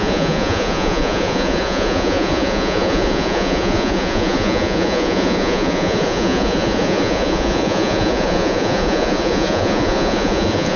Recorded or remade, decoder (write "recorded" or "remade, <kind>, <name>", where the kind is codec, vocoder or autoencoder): remade, vocoder, Vocos